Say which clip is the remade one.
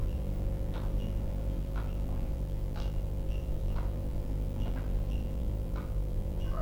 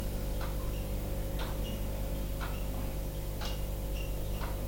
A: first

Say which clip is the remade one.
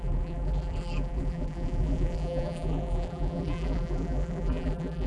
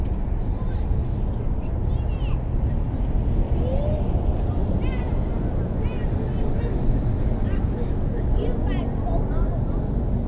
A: first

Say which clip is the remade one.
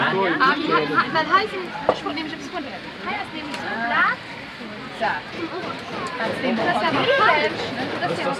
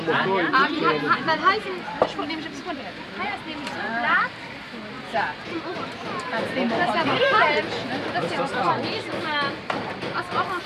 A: first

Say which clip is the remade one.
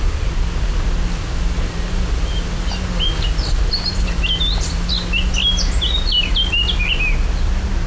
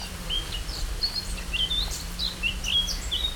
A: second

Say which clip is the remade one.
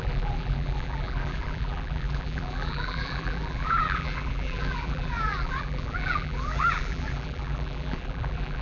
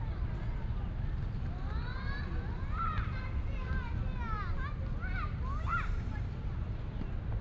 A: first